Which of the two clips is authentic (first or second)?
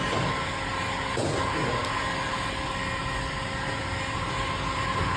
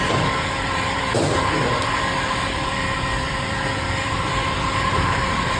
first